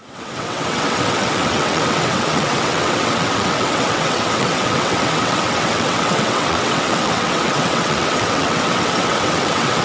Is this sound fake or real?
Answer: fake